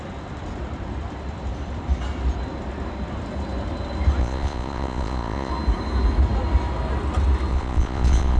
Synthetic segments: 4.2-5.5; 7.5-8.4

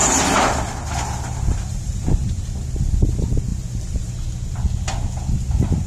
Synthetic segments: 0.0-2.3; 3.5-4.1

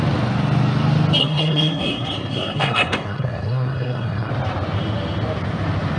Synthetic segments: 1.2-4.3

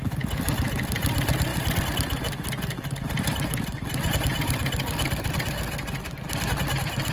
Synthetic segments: none

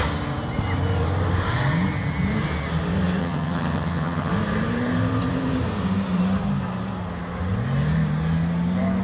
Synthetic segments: 3.2-4.3

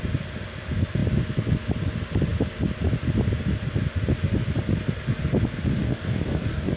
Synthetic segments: 5.8-6.8